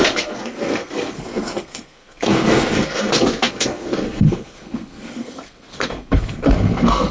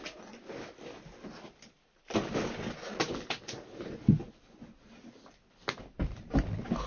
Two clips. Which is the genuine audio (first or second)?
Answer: second